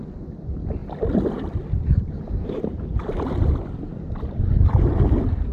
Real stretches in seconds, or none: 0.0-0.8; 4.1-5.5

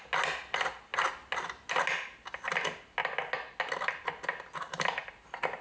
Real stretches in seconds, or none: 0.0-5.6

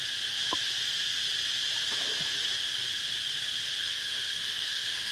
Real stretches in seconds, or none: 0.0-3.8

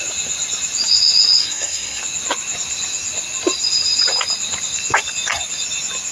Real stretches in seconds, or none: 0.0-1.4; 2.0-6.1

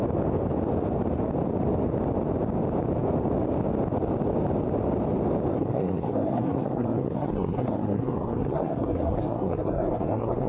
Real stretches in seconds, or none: 0.0-5.5

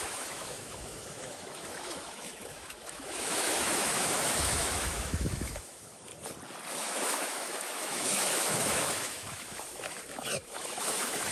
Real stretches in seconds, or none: 6.1-6.7

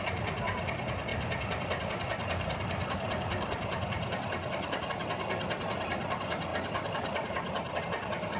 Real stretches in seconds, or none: 0.0-1.1; 4.9-6.5; 7.8-8.4

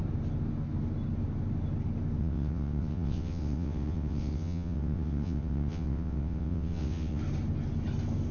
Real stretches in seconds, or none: 0.0-2.2; 7.2-8.3